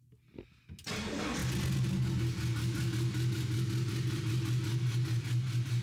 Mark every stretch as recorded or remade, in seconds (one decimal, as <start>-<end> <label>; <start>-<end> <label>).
0.0-5.8 recorded